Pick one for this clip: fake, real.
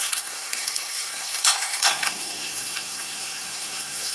fake